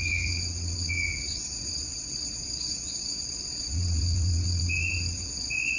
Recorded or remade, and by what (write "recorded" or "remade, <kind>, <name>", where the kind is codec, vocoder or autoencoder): remade, vocoder, WaveNeXt